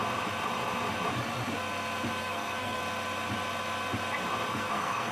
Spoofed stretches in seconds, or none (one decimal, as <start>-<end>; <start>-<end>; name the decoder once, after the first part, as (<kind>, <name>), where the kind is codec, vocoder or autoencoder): 2.2-2.8 (codec, SNAC); 4.5-5.1